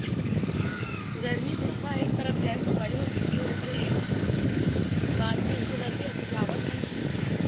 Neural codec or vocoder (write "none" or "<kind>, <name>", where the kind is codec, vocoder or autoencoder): codec, DAC